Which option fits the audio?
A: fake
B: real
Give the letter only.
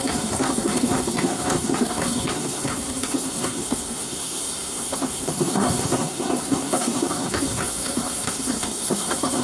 A